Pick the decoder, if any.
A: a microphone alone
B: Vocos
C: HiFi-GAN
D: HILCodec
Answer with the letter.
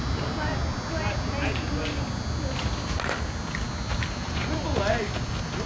A